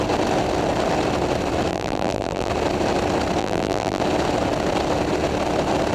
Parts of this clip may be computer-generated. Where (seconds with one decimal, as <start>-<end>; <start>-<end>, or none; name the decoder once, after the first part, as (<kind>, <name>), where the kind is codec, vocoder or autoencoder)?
1.7-2.5 (vocoder, BigVGAN v2); 3.4-4.0